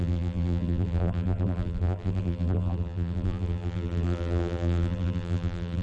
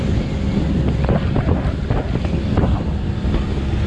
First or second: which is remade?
first